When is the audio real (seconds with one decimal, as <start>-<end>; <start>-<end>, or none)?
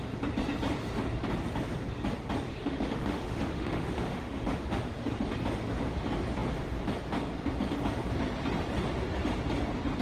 0.0-2.6; 4.8-10.0